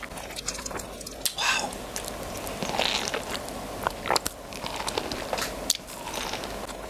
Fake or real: real